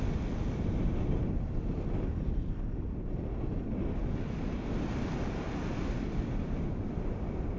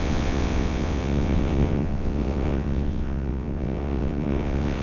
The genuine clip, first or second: first